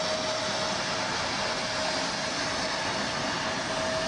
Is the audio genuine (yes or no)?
yes